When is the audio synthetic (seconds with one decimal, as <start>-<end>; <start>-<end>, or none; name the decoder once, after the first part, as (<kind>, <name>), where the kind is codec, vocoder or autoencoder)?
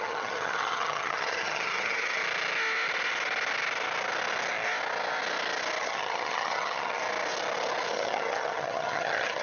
0.0-2.2 (vocoder, HiFi-GAN); 5.8-7.0; 7.9-9.4